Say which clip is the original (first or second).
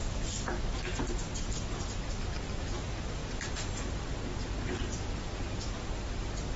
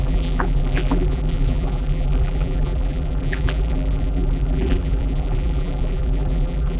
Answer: first